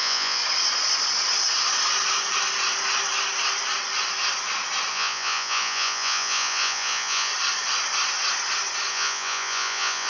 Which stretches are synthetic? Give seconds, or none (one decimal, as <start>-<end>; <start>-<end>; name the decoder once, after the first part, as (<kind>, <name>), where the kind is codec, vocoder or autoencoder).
0.0-0.4 (vocoder, Vocos); 4.9-7.3; 8.9-10.1